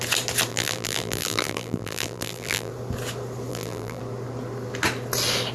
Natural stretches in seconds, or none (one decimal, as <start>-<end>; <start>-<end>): 0.0-0.5; 2.7-3.5; 4.0-5.5